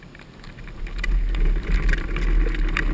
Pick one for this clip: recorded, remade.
recorded